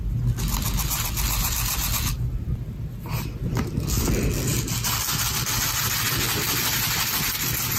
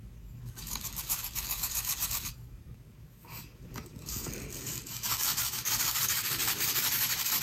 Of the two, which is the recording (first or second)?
first